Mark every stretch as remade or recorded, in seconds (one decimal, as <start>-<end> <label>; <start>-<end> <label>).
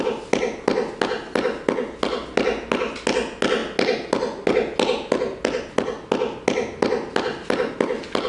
0.0-8.3 recorded